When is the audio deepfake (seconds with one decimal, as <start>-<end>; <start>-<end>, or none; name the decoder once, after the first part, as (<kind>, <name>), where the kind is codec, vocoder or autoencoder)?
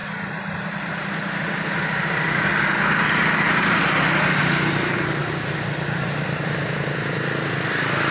none